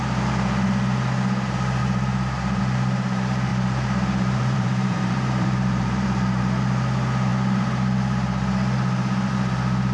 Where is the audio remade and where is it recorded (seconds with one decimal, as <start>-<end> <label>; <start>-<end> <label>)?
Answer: 0.0-1.8 recorded; 1.8-2.6 remade; 2.6-3.5 recorded; 3.5-6.4 remade; 6.4-9.9 recorded